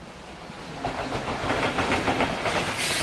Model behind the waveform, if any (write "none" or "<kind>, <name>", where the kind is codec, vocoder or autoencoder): none